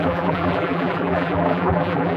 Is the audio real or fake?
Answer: fake